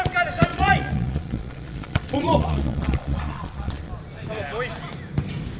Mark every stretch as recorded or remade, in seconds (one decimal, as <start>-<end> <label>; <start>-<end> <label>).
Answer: 0.0-0.5 recorded; 0.5-3.9 remade; 3.9-5.6 recorded